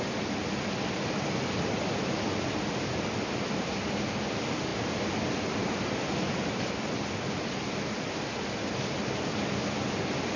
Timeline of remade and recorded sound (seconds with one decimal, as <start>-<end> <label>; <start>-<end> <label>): 0.0-4.7 recorded; 4.7-6.7 remade; 6.7-10.4 recorded